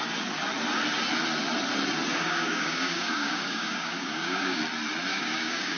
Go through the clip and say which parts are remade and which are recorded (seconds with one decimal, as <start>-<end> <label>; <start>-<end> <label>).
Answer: 0.0-2.1 recorded; 2.1-4.6 remade; 4.6-5.1 recorded; 5.1-5.8 remade